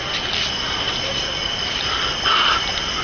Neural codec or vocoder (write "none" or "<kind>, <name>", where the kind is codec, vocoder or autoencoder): none